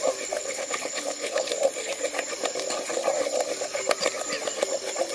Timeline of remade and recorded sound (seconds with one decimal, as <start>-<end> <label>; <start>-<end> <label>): 0.0-0.4 recorded; 0.4-1.5 remade; 1.5-5.1 recorded